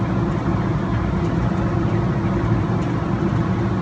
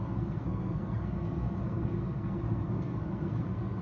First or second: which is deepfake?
second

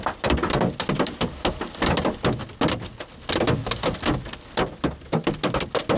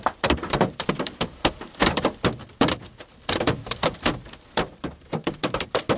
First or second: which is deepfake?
second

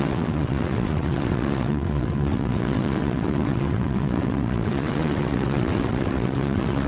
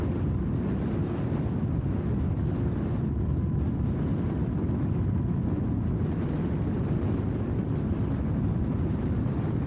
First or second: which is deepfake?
first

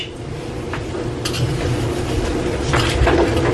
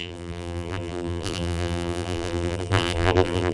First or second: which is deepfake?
second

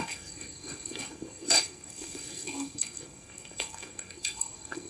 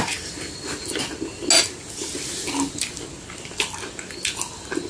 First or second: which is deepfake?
first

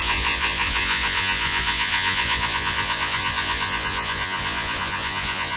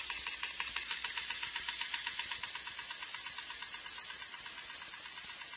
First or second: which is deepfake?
first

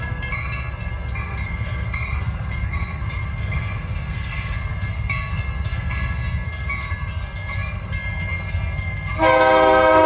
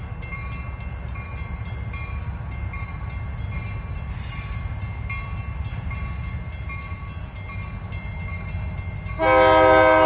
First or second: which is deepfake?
first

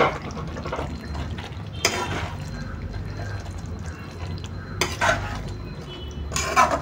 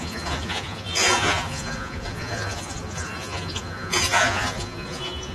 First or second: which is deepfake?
second